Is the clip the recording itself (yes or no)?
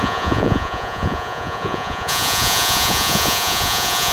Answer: no